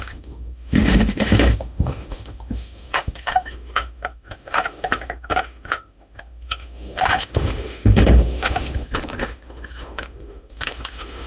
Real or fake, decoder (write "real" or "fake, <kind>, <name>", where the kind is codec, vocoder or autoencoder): fake, autoencoder, DAC-VAE